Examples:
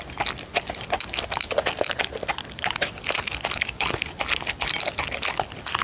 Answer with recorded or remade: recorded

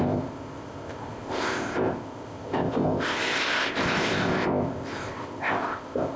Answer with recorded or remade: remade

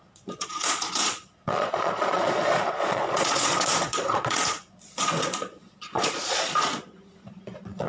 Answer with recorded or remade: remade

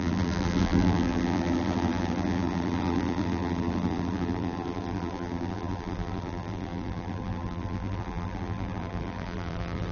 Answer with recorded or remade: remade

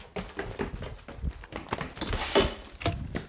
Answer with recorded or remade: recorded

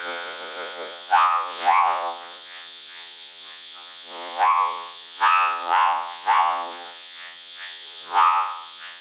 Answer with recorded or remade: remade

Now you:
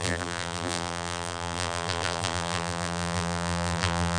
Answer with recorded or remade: remade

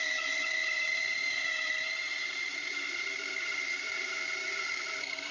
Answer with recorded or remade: remade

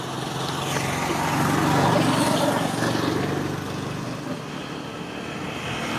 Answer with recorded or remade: recorded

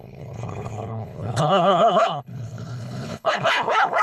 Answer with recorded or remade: remade